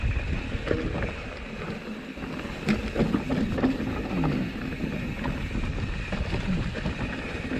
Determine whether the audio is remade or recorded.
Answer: recorded